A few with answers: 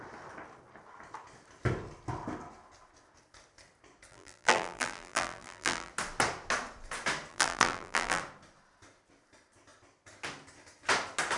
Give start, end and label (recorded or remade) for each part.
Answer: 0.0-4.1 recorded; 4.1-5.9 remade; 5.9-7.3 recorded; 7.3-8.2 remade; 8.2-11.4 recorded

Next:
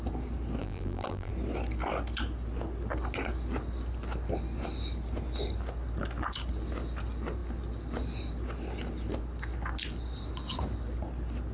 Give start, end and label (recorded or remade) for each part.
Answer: 0.0-0.6 recorded; 0.6-1.3 remade; 1.3-11.5 recorded

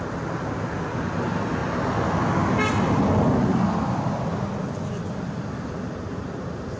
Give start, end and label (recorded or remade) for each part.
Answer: 0.0-6.8 recorded

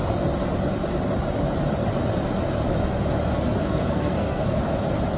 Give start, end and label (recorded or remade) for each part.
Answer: 0.0-3.6 recorded; 3.6-4.6 remade; 4.6-5.2 recorded